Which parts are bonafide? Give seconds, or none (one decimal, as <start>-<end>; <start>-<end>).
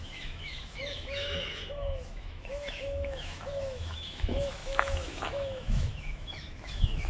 none